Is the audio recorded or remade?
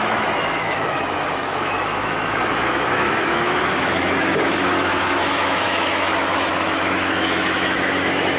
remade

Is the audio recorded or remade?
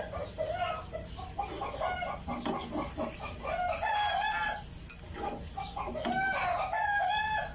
recorded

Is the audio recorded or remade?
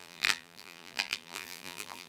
remade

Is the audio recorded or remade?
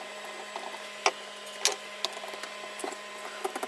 recorded